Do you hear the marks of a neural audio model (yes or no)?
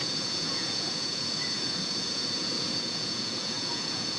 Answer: yes